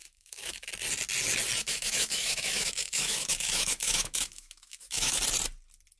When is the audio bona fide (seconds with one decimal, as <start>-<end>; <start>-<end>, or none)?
0.7-1.6; 5.2-6.0